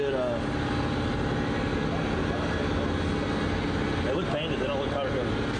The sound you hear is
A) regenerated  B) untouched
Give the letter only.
B